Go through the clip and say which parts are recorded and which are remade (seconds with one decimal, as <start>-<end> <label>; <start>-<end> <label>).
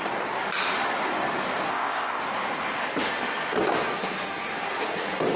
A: 0.0-1.7 recorded; 1.7-2.2 remade; 2.2-5.4 recorded